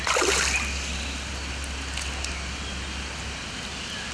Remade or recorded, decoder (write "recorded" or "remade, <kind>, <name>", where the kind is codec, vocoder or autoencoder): recorded